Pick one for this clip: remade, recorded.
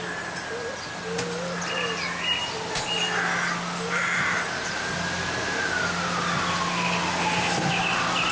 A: recorded